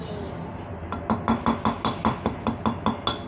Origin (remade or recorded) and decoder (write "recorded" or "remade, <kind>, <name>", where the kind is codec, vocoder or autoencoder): recorded